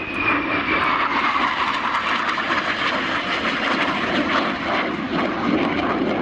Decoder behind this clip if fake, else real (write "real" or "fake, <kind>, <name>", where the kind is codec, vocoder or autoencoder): real